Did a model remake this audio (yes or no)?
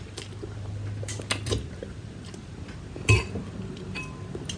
no